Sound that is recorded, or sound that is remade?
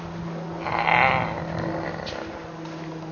recorded